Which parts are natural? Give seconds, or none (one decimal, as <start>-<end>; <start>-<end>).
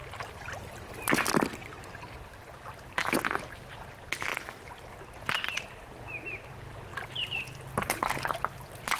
0.0-9.0